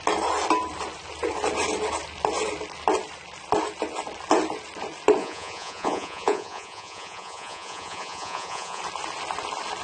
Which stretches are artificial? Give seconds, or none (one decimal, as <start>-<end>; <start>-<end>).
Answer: 5.2-8.8